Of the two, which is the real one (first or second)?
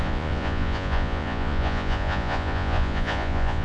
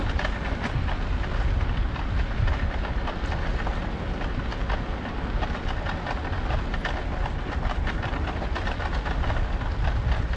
second